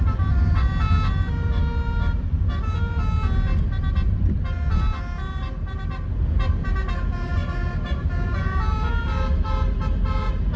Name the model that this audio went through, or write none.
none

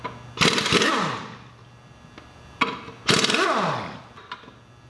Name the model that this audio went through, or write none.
none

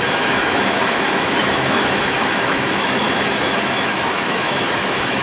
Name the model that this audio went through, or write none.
autoencoder, DAC-VAE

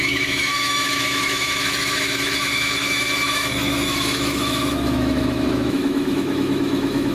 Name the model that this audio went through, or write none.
autoencoder, DAC-VAE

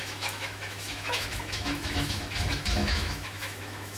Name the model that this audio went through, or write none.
autoencoder, DAC-VAE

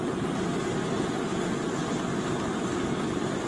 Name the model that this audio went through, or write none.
none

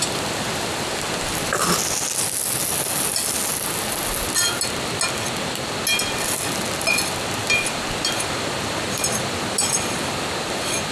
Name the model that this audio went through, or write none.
none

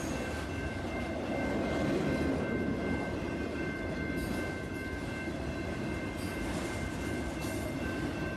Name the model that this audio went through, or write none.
none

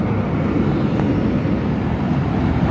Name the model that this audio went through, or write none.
none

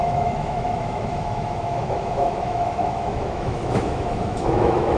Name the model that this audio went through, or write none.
autoencoder, DAC-VAE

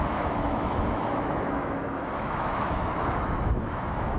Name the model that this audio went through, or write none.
autoencoder, DAC-VAE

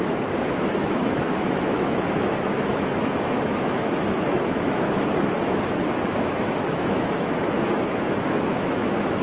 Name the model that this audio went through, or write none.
autoencoder, DAC-VAE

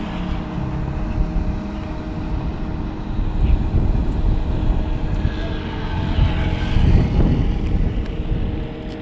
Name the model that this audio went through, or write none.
none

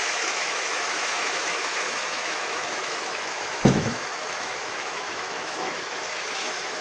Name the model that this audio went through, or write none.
autoencoder, DAC-VAE